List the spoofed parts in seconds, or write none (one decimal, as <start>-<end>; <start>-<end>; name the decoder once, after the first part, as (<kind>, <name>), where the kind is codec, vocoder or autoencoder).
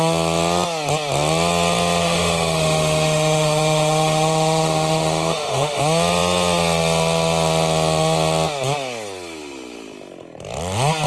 2.0-5.8 (autoencoder, DAC-VAE)